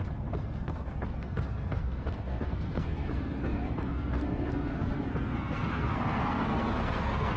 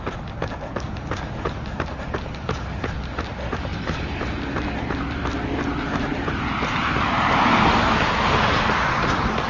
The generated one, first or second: first